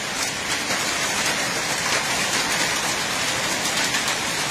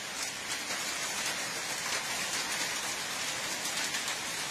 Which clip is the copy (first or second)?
first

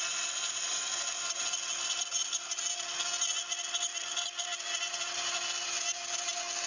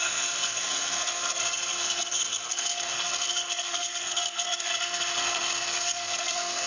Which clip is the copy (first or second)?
second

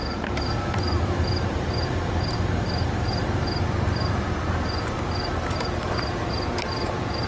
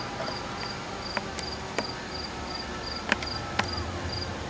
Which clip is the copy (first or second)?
first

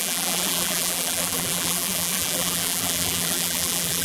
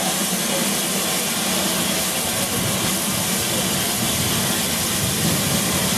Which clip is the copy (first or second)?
first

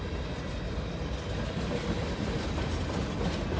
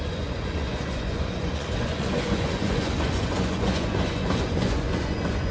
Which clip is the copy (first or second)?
second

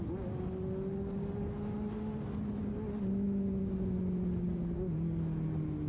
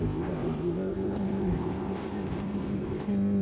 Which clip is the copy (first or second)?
second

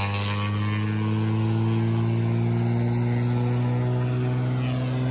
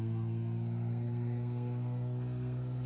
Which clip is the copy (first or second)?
second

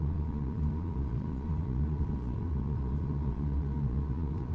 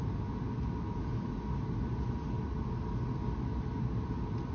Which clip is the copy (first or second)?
first